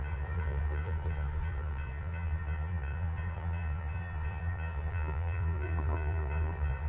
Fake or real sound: fake